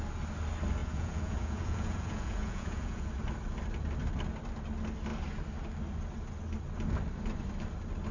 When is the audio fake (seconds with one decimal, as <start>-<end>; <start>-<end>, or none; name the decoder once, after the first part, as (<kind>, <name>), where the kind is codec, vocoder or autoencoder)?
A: 0.8-3.1 (vocoder, Vocos)